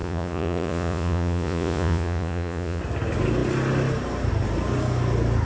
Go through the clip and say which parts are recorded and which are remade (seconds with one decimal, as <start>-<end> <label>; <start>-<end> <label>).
0.0-2.8 remade; 2.8-5.4 recorded